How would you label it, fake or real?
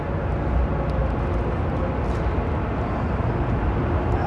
real